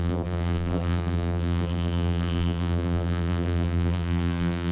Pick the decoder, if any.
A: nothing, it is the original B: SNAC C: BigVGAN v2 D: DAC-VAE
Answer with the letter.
C